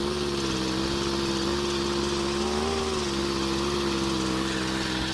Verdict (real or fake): real